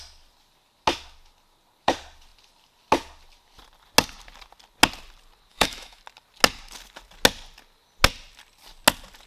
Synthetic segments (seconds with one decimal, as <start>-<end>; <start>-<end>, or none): 5.5-6.0